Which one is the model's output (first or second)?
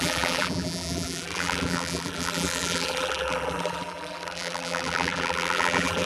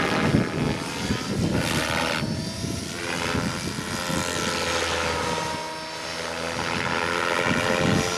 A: first